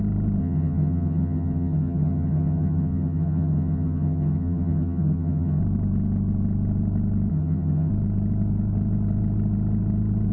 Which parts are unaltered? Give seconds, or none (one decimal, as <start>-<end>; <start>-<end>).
0.0-0.4; 5.6-7.3; 7.9-10.3